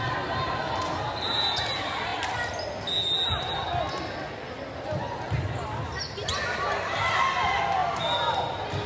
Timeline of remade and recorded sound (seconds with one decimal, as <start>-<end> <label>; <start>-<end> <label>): 0.0-8.9 recorded